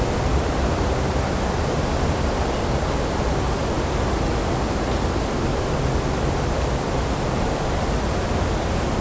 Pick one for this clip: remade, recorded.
recorded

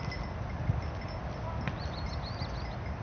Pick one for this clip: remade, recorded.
recorded